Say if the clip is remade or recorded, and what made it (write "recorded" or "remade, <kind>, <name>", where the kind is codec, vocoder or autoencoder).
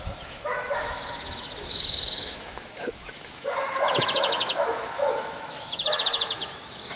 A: remade, autoencoder, DAC-VAE